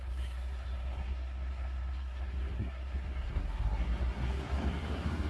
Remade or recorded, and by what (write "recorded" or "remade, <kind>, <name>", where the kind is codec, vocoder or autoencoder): remade, codec, SNAC